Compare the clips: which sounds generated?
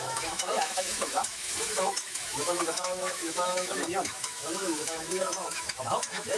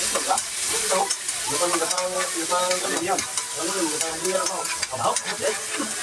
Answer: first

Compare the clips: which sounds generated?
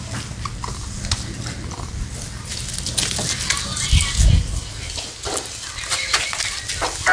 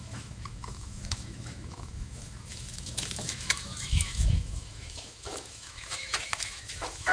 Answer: second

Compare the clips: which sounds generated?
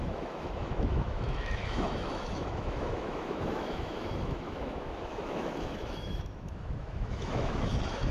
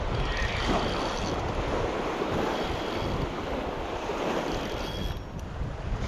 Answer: first